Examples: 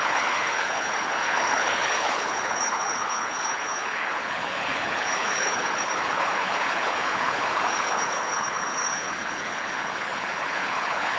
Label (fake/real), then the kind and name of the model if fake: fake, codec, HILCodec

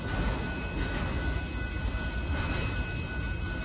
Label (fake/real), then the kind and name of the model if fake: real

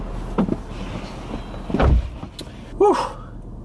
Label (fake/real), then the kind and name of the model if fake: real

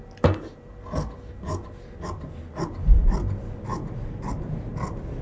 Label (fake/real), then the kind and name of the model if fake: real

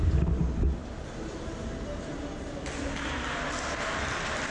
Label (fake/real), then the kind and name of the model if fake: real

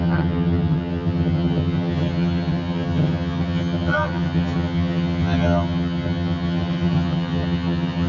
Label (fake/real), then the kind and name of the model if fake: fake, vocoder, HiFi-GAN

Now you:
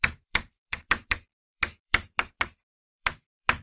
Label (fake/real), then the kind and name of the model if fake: fake, vocoder, BigVGAN v2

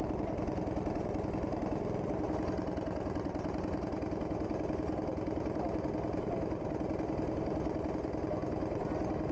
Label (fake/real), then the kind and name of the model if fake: real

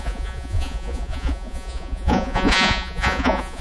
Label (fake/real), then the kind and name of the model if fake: fake, vocoder, Vocos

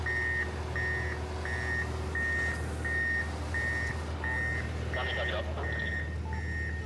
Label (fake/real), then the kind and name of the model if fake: real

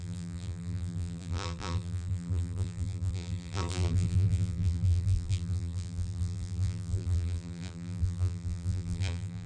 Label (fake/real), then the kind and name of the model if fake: fake, vocoder, BigVGAN v2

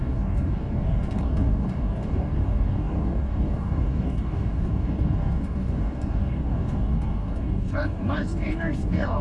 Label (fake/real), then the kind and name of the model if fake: fake, codec, DAC